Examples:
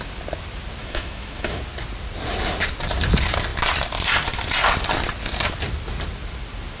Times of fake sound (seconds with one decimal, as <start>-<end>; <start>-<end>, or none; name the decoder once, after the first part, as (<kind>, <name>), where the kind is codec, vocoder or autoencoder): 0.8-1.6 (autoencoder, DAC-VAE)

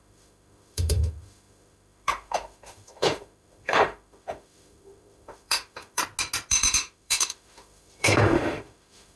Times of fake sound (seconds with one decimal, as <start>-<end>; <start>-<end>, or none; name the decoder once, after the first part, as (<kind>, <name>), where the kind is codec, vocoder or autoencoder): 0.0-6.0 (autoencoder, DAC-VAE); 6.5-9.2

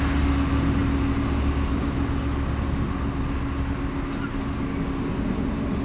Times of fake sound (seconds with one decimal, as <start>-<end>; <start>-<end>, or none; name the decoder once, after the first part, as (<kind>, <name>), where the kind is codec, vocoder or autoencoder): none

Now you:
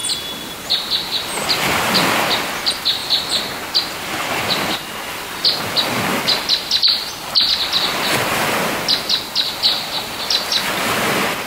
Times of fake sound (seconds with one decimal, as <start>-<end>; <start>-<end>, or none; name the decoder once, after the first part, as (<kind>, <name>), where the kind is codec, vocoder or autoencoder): none

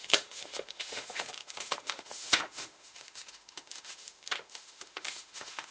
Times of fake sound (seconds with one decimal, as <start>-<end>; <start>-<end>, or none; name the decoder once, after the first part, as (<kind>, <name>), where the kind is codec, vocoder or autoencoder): 0.0-5.7 (autoencoder, DAC-VAE)

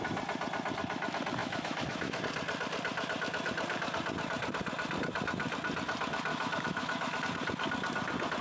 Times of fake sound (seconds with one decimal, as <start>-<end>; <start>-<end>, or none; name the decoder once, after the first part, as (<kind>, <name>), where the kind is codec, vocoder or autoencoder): 1.4-2.2 (autoencoder, DAC-VAE); 6.3-7.2

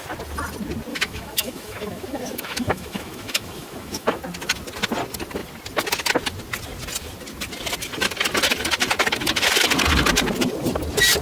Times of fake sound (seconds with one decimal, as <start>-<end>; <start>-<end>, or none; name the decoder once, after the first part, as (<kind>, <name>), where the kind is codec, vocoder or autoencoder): 0.9-4.2 (autoencoder, DAC-VAE)

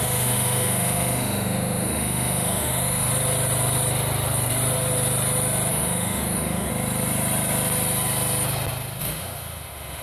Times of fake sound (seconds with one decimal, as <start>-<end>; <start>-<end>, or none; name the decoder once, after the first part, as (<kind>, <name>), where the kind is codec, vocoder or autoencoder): 0.0-3.1 (autoencoder, DAC-VAE); 5.7-6.7; 9.0-10.0